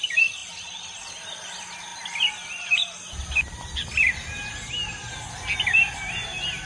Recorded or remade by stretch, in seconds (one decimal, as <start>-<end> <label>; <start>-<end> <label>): 0.0-6.7 recorded